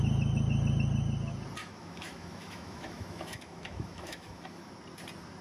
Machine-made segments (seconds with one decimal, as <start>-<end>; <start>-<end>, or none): 1.6-4.7